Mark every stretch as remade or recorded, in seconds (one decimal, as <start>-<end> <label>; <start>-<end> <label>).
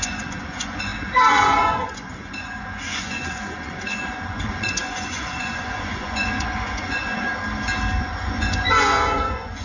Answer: 0.0-7.3 remade; 7.3-8.0 recorded; 8.0-9.6 remade